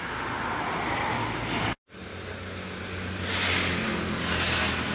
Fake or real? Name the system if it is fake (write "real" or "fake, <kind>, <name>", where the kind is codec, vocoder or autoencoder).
real